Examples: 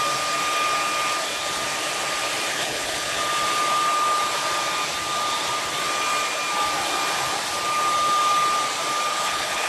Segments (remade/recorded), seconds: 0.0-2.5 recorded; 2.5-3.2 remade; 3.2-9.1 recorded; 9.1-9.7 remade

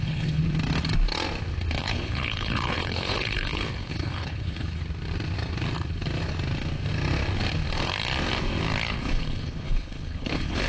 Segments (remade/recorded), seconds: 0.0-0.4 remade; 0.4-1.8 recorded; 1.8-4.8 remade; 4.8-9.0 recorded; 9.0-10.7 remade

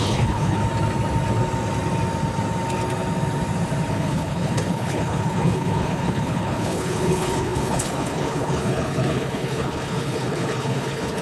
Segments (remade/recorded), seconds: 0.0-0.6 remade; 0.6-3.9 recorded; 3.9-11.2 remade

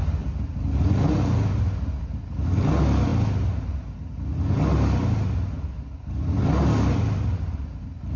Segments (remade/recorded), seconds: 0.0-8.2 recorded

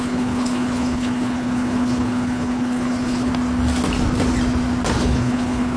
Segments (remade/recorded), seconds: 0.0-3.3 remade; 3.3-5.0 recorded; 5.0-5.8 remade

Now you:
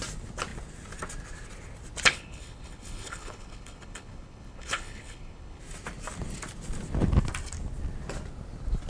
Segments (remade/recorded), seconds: 0.0-2.1 recorded; 2.1-5.6 remade; 5.6-8.9 recorded

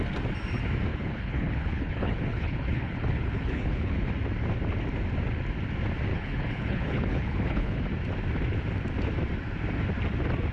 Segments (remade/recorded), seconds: 0.0-0.9 recorded; 0.9-4.1 remade; 4.1-6.1 recorded; 6.1-7.8 remade; 7.8-10.5 recorded